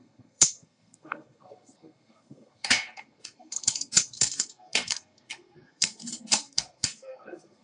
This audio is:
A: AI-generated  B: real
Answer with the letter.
A